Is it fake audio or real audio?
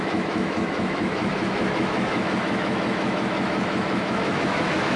fake